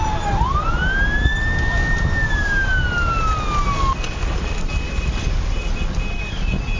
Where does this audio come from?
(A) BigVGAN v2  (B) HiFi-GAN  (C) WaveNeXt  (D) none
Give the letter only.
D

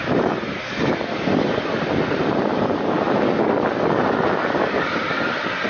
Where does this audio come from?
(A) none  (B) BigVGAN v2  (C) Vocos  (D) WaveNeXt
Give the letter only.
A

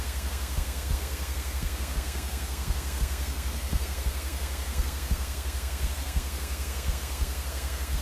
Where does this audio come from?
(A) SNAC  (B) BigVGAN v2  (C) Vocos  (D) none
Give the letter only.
A